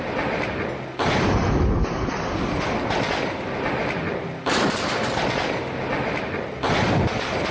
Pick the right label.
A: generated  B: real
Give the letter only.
B